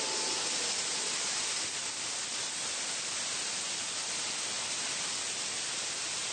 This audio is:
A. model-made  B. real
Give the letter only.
B